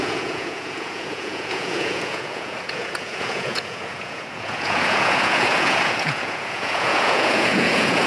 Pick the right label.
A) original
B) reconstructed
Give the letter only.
B